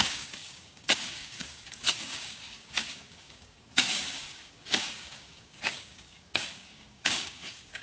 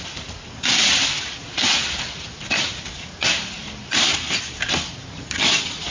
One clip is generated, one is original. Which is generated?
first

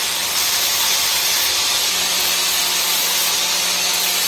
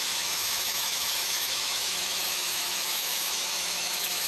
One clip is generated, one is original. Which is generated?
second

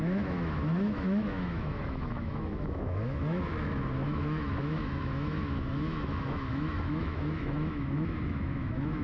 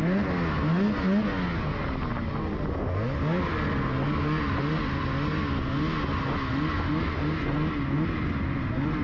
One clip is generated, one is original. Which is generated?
first